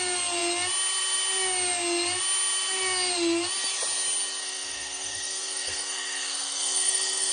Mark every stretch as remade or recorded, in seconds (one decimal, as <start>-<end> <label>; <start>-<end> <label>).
0.0-4.4 recorded; 4.4-7.3 remade